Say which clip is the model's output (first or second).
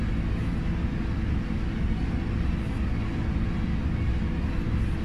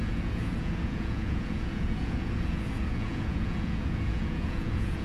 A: second